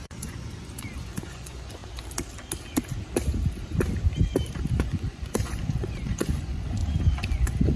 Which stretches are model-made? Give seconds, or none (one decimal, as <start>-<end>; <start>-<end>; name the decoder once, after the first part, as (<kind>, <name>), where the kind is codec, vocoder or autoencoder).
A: 0.0-1.8 (vocoder, Vocos); 4.7-6.8; 7.3-7.8